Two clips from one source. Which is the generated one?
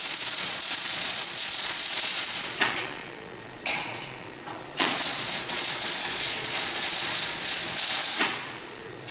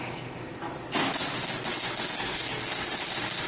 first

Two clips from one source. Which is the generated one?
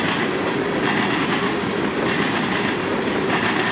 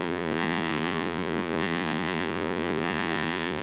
second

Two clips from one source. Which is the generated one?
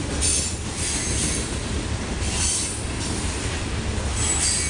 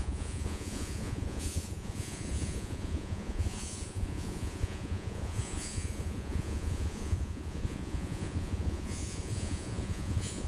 second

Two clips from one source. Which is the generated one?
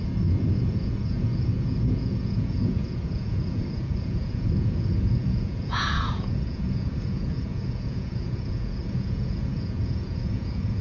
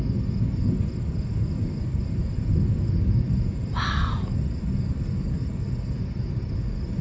first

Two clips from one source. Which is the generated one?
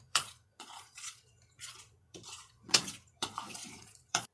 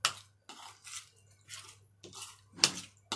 first